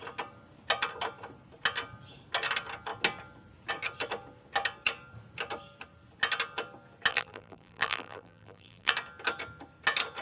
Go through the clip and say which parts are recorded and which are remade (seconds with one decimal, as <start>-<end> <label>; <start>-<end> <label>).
0.0-7.1 recorded; 7.1-8.9 remade; 8.9-10.2 recorded